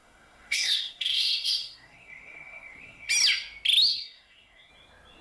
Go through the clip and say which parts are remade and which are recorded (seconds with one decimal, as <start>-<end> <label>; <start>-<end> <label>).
0.0-3.1 remade; 3.1-3.9 recorded; 3.9-4.7 remade; 4.7-5.2 recorded